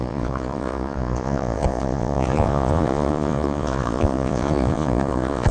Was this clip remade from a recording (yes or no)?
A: yes